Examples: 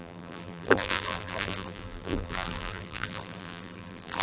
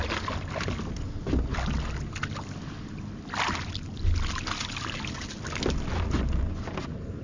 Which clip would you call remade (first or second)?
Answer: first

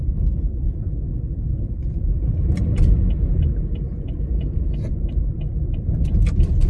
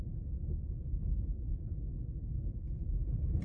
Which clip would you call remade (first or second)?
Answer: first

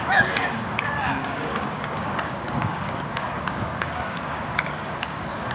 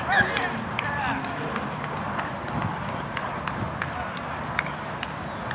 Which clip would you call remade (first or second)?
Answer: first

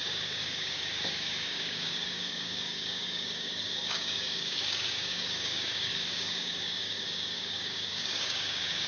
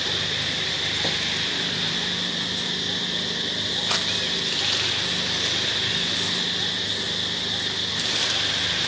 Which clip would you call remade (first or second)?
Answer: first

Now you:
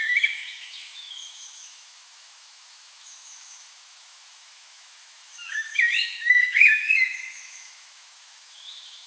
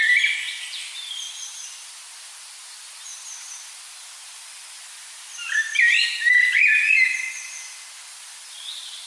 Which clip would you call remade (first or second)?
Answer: first